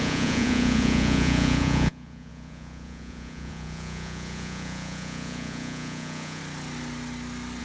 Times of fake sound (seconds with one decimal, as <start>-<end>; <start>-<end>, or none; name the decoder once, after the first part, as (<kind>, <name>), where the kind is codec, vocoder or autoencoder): 0.0-6.4 (vocoder, Vocos)